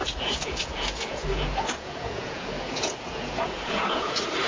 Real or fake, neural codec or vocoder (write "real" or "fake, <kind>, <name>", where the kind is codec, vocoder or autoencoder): fake, vocoder, Vocos